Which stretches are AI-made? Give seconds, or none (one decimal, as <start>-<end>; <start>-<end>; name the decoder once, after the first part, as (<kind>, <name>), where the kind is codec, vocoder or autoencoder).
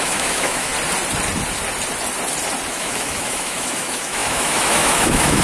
0.0-0.7 (autoencoder, DAC-VAE); 2.7-5.4